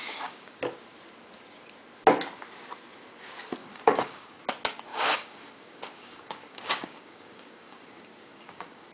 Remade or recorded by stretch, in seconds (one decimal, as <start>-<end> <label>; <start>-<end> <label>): 0.0-0.6 remade; 0.6-3.6 recorded; 3.6-4.4 remade; 4.4-4.9 recorded; 4.9-8.9 remade